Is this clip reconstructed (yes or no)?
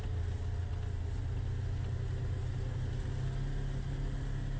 no